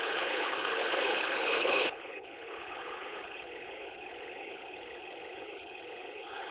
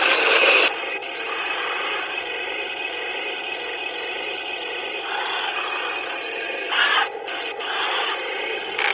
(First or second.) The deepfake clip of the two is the first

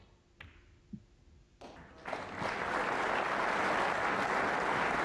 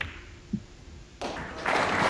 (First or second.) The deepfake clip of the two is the second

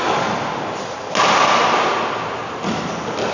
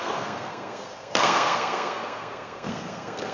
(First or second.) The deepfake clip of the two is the second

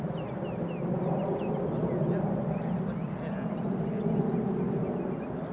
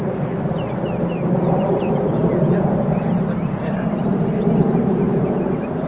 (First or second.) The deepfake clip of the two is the second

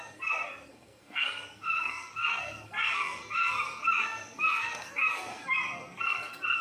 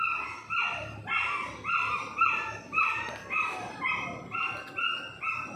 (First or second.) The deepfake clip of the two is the first